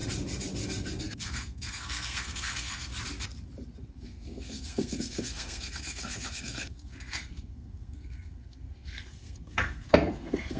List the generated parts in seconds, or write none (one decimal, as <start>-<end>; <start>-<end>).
1.0-2.9; 3.9-10.6